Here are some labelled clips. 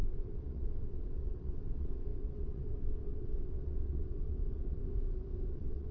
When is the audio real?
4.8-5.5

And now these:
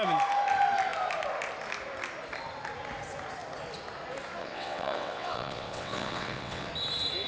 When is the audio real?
0.0-4.4; 6.7-7.3

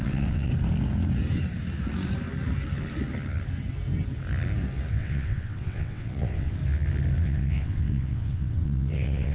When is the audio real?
0.5-4.9; 6.6-7.2

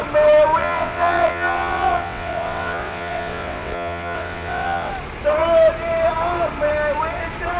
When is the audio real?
0.0-0.6; 4.9-7.6

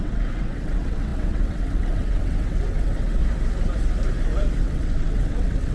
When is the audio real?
3.2-4.6